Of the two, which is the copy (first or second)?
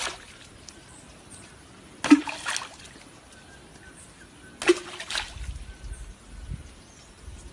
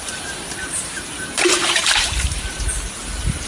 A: second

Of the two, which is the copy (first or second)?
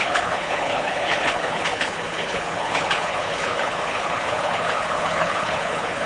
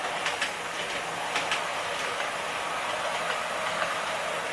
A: first